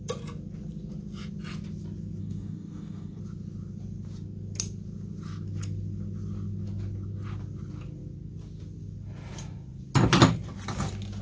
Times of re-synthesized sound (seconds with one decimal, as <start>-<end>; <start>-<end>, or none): 2.2-3.2